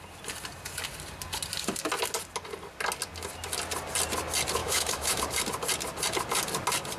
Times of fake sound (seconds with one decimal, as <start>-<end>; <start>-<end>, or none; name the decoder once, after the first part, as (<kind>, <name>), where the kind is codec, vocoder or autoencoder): 4.6-5.2 (autoencoder, DAC-VAE)